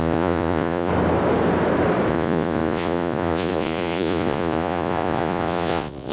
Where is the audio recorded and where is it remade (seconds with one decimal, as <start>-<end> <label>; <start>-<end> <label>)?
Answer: 0.0-0.9 remade; 0.9-2.1 recorded; 2.1-6.1 remade